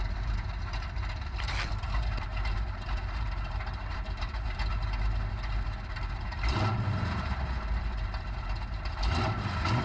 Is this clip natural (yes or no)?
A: no